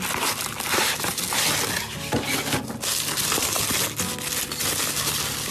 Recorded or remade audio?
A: recorded